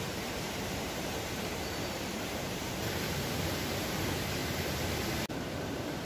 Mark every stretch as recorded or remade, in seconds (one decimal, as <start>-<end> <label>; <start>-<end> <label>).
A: 0.0-4.4 remade; 4.4-5.3 recorded; 5.3-6.0 remade